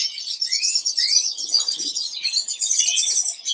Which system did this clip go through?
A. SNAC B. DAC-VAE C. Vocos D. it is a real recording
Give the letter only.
C